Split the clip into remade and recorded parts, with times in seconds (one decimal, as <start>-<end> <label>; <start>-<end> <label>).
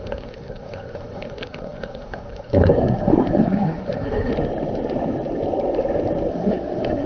0.0-4.3 remade; 4.3-6.3 recorded; 6.3-7.1 remade